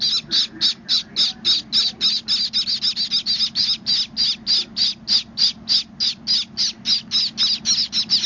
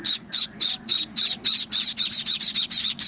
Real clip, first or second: first